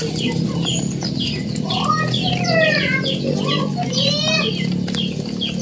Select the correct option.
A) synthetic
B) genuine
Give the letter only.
B